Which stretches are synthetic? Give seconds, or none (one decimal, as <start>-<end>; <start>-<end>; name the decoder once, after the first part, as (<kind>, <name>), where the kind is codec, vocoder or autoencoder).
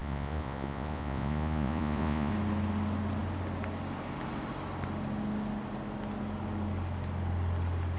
0.0-2.3 (vocoder, Vocos)